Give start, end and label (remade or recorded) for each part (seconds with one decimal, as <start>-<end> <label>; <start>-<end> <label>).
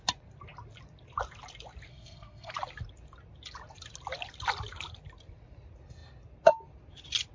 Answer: 0.0-1.9 recorded; 1.9-2.5 remade; 2.5-7.3 recorded